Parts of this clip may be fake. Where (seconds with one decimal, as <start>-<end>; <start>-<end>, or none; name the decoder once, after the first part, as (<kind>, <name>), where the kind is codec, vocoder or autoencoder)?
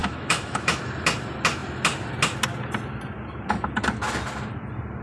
0.0-0.8 (autoencoder, DAC-VAE)